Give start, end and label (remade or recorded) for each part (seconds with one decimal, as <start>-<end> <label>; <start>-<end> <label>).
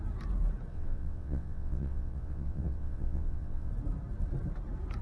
0.0-0.7 recorded; 0.7-3.7 remade; 3.7-5.0 recorded